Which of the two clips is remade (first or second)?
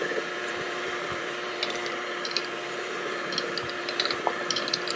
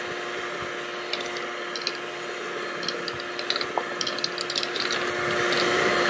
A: first